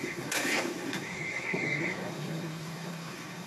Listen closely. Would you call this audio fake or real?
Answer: fake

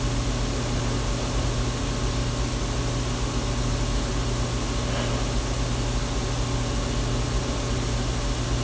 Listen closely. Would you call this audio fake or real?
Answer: real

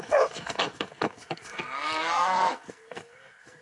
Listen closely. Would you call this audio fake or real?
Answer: fake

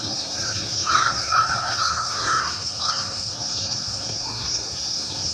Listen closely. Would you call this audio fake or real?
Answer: fake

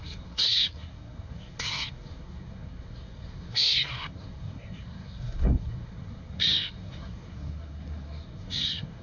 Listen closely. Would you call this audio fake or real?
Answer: fake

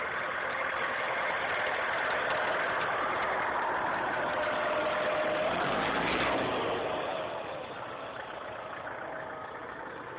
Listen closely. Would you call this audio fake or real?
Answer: real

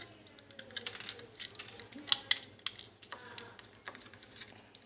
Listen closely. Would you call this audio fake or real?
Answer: real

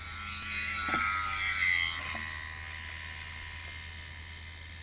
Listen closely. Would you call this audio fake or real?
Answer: real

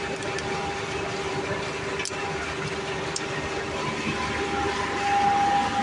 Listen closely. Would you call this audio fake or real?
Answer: real